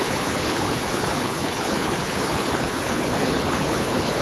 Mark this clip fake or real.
fake